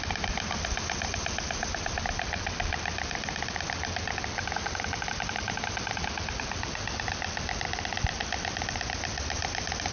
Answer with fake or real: real